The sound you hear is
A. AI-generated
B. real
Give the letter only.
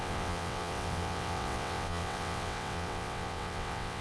A